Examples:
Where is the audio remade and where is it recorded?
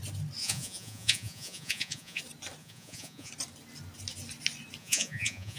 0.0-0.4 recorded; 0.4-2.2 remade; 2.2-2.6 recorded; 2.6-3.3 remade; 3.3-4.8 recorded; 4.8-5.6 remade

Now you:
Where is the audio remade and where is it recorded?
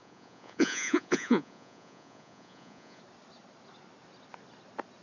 0.0-3.0 remade; 3.0-5.0 recorded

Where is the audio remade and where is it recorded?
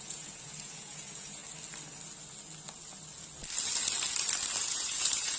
0.0-1.4 remade; 1.4-4.6 recorded; 4.6-5.4 remade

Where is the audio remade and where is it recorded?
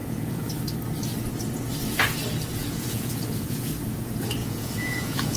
0.0-0.5 remade; 0.5-2.6 recorded; 2.6-3.7 remade; 3.7-4.4 recorded; 4.4-5.4 remade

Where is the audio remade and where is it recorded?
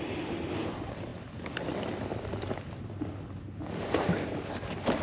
0.0-5.0 recorded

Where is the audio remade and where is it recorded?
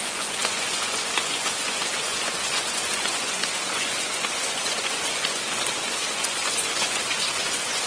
0.0-7.9 remade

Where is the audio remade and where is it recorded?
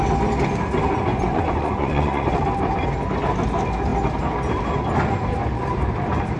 0.0-1.1 recorded; 1.1-2.4 remade; 2.4-6.4 recorded